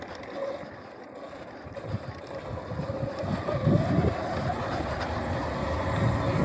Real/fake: real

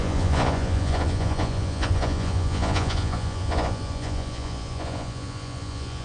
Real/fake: fake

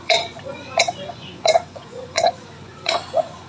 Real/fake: fake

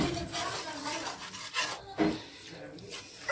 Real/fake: real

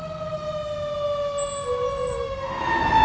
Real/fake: real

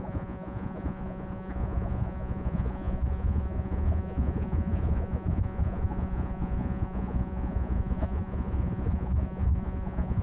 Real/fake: fake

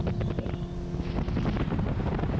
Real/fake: real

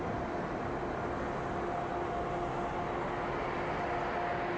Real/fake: real